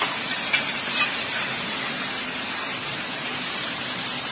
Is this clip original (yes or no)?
no